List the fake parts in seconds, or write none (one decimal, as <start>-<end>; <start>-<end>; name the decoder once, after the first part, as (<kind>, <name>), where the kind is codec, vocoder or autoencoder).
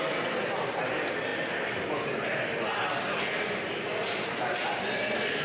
none